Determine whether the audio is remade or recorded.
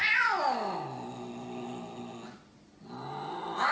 recorded